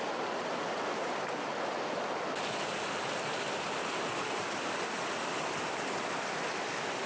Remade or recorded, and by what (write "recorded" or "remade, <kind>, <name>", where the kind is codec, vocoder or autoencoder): recorded